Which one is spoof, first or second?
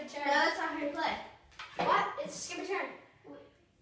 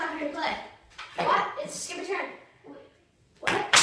second